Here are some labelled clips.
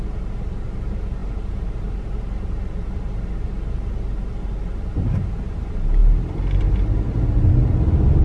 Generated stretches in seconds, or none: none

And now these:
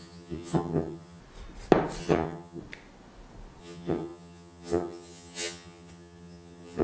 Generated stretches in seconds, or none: 0.0-1.2 (vocoder, HiFi-GAN); 2.0-2.6; 3.6-6.8

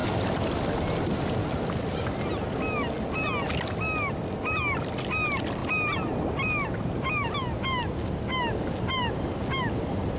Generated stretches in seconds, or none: none

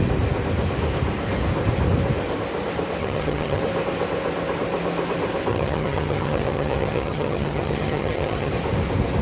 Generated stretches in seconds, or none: 3.0-3.6 (vocoder, HiFi-GAN); 5.5-8.5

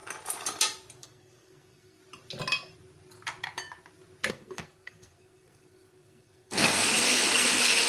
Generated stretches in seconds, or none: 1.0-2.0 (codec, SNAC); 4.3-7.9

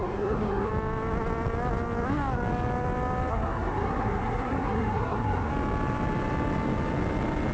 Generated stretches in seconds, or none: 0.0-0.7 (codec, SNAC); 3.3-5.5

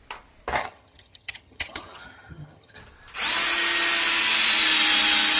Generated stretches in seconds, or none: 0.6-2.8 (vocoder, HiFi-GAN)